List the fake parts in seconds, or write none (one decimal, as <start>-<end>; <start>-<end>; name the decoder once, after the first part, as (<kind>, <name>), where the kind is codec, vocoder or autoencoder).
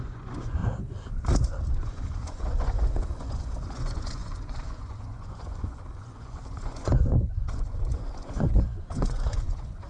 0.0-0.6 (vocoder, Vocos); 1.7-9.9